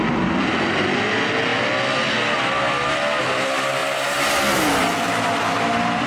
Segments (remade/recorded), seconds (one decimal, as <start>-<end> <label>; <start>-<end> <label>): 0.0-6.1 recorded